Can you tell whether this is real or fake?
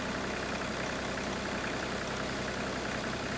real